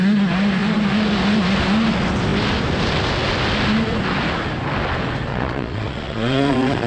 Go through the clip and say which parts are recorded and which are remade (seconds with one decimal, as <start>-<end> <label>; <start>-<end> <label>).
0.0-5.3 recorded; 5.3-6.9 remade